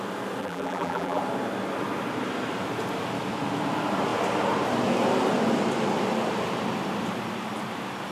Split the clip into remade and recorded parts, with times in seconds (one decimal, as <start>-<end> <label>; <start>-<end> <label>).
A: 0.0-0.4 recorded; 0.4-1.2 remade; 1.2-8.1 recorded